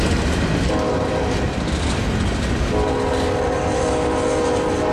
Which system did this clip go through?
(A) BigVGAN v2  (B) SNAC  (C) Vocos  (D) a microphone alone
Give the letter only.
D